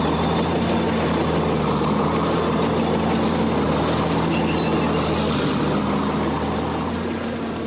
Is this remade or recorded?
recorded